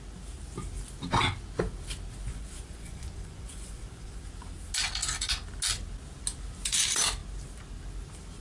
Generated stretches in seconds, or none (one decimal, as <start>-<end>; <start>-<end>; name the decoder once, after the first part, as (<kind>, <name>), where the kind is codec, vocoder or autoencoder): 2.3-4.2 (vocoder, Vocos)